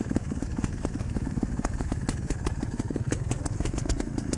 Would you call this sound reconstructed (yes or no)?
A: yes